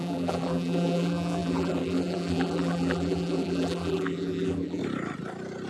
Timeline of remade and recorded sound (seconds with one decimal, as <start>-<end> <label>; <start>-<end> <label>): 0.0-4.8 remade; 4.8-5.7 recorded